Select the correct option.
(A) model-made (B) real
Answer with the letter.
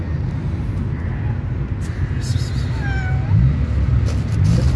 B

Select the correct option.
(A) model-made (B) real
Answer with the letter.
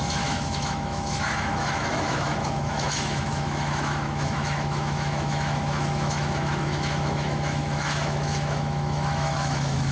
A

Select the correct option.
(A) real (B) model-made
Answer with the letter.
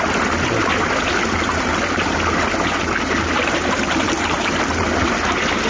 A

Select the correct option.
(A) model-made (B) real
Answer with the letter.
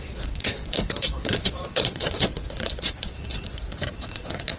A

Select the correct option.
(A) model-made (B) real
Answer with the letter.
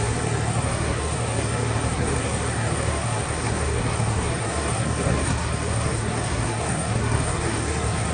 A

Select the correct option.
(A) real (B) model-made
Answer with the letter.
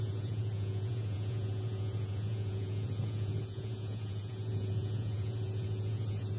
B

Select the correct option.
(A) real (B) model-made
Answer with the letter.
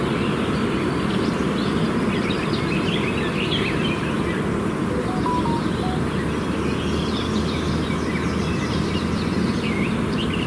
A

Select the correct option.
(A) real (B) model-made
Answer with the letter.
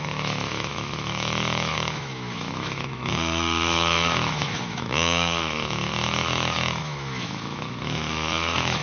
B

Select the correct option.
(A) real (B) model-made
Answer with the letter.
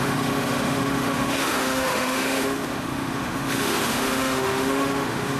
B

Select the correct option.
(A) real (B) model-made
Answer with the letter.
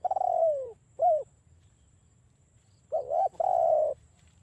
B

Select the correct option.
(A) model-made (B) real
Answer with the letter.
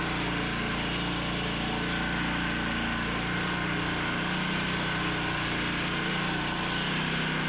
B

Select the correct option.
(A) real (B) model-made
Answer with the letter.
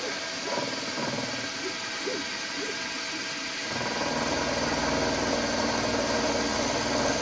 A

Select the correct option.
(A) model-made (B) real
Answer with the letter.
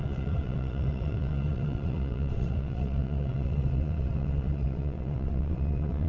A